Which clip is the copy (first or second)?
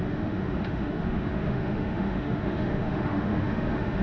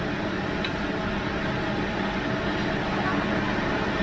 first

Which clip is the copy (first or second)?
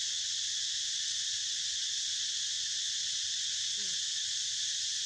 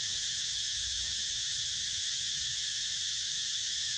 second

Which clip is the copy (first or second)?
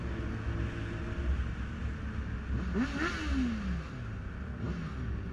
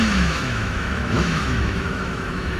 second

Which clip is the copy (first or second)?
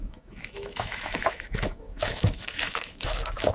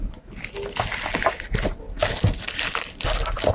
first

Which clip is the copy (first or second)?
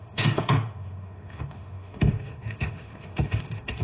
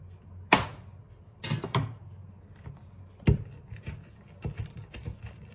first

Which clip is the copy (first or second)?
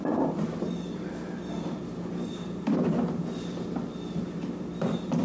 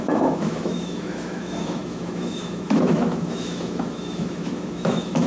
second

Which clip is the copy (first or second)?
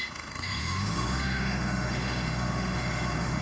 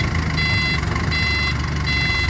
first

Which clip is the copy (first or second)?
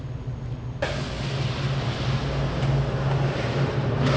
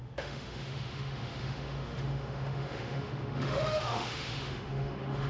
second